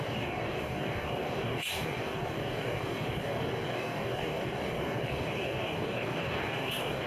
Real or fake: fake